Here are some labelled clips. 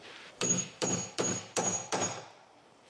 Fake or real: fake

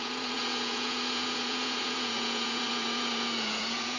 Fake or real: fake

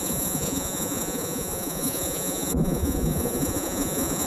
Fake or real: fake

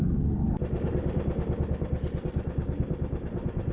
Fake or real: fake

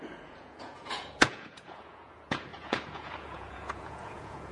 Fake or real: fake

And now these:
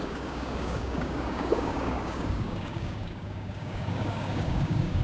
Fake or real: fake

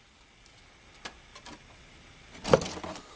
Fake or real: real